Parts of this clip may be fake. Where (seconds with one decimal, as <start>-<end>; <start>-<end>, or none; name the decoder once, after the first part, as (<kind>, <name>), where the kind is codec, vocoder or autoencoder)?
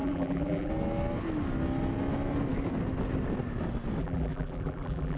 0.0-0.7 (vocoder, BigVGAN v2); 4.0-5.2